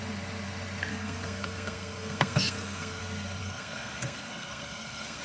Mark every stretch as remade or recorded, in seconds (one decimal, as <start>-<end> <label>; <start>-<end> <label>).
0.0-0.9 recorded; 0.9-3.0 remade; 3.0-3.4 recorded; 3.4-5.2 remade